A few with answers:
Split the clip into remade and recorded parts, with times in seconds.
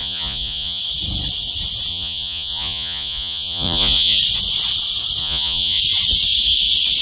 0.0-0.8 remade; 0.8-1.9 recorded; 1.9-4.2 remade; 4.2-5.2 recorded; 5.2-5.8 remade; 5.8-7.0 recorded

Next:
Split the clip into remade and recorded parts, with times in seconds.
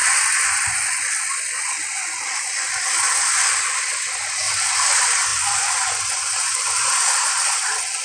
0.0-3.7 recorded; 3.7-8.0 remade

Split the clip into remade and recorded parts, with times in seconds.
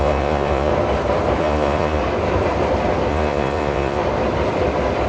0.0-0.7 remade; 0.7-1.4 recorded; 1.4-2.0 remade; 2.0-3.1 recorded; 3.1-4.0 remade; 4.0-5.1 recorded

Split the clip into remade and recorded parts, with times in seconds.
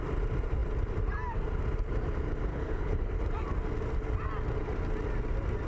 0.0-2.5 recorded; 2.5-3.2 remade; 3.2-5.7 recorded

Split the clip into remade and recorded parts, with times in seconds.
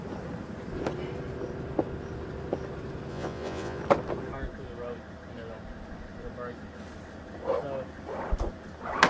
0.0-3.1 recorded; 3.1-3.8 remade; 3.8-9.1 recorded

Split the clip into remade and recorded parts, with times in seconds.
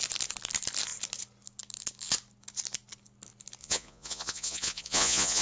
0.0-3.6 recorded; 3.6-5.4 remade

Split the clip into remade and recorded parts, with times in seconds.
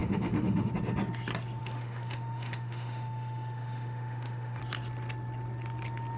0.0-0.7 remade; 0.7-1.6 recorded; 1.6-4.6 remade; 4.6-6.2 recorded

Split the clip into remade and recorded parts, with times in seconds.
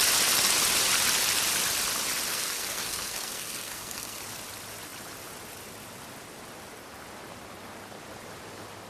0.0-2.3 recorded; 2.3-4.2 remade; 4.2-8.9 recorded